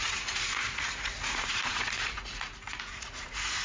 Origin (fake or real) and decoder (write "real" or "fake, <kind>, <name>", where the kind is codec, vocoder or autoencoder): fake, vocoder, Vocos